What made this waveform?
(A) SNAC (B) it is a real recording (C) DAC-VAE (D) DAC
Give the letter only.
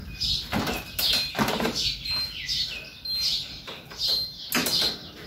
B